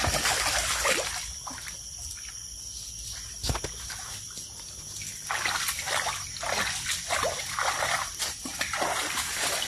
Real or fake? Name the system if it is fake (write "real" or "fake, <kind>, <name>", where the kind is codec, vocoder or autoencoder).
real